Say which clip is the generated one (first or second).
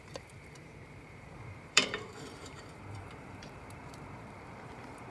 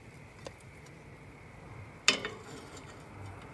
first